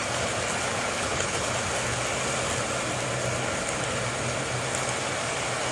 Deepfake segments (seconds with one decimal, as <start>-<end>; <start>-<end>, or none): 0.7-1.5